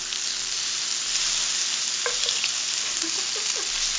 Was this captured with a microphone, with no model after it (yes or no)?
yes